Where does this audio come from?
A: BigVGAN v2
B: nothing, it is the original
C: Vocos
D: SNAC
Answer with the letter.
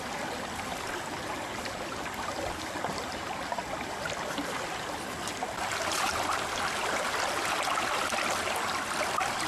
B